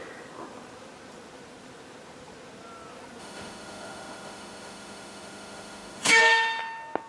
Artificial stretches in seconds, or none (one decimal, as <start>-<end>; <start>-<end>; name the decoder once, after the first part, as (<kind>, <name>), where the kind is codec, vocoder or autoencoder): 3.2-6.2 (autoencoder, DAC-VAE)